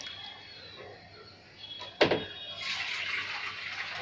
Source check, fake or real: real